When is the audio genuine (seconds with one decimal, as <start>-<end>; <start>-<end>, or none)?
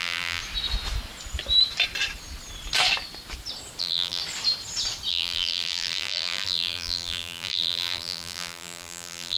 0.4-3.8; 4.2-5.1